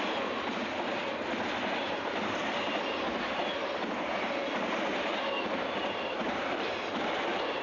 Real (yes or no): yes